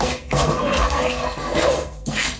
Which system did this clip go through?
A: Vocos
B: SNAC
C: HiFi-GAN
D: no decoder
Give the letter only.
B